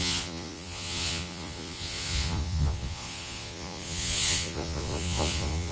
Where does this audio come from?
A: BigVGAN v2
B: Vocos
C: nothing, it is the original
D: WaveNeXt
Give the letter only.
B